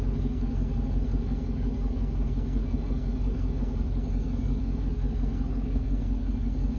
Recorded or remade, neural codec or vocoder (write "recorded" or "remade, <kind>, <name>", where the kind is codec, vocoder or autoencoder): remade, codec, SNAC